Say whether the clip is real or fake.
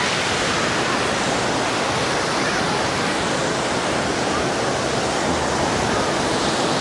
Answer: real